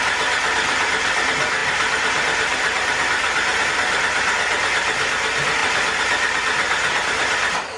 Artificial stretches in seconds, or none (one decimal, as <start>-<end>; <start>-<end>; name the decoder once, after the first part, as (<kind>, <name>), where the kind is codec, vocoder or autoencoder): none